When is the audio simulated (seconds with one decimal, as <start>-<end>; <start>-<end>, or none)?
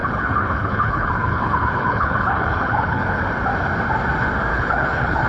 0.0-3.2; 4.5-5.3